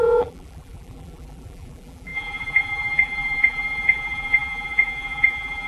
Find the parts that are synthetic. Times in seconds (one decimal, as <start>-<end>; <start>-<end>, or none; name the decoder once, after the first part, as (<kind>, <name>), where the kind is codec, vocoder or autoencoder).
0.0-5.7 (vocoder, BigVGAN v2)